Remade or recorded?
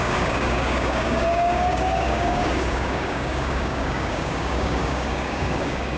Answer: remade